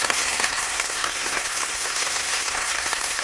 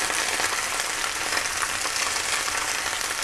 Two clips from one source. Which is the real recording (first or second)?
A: second